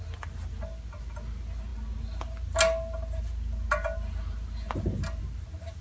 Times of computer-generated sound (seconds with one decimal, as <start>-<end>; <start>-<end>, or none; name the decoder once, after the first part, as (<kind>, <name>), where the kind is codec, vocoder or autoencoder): none